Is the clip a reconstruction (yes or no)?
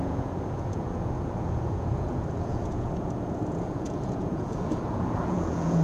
yes